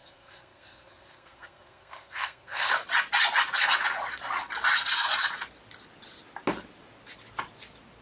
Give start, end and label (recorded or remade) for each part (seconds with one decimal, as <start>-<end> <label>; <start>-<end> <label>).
0.0-2.7 remade; 2.7-8.0 recorded